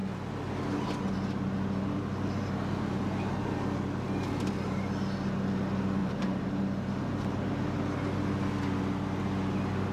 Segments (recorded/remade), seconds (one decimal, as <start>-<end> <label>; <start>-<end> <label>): 0.0-6.0 recorded; 6.0-6.9 remade; 6.9-9.9 recorded